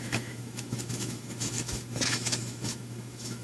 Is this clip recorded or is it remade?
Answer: remade